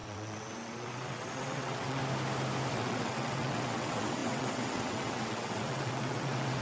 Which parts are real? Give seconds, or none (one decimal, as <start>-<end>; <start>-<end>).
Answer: 2.0-2.7